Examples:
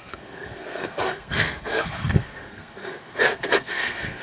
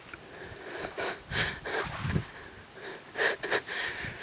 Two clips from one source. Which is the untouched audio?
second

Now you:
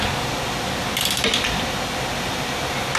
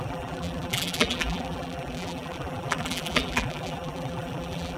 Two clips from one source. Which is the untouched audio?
first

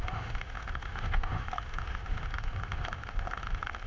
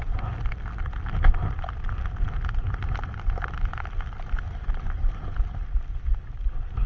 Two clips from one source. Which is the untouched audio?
second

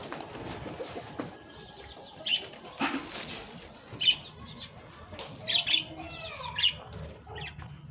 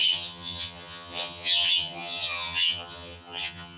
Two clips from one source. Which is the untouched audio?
first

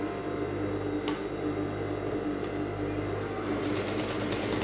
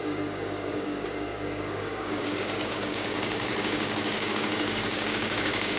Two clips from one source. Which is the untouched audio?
first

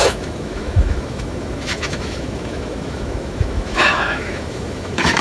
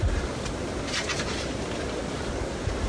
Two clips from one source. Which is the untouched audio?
second